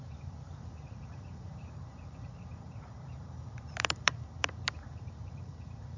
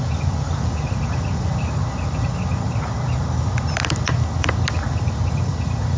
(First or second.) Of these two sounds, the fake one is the first